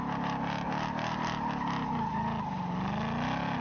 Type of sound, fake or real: real